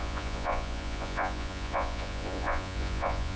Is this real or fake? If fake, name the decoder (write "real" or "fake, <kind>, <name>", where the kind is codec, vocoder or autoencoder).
fake, vocoder, Vocos